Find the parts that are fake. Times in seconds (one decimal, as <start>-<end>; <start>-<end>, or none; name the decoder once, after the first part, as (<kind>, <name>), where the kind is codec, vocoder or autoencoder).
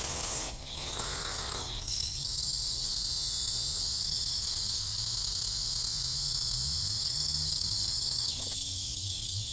0.0-2.9 (codec, DAC); 4.0-5.0; 6.9-9.5